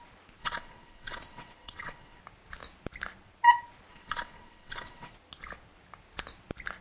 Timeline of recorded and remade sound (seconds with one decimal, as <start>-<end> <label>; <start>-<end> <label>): 0.0-0.4 recorded; 0.4-2.2 remade; 2.2-3.9 recorded; 3.9-5.1 remade; 5.1-6.8 recorded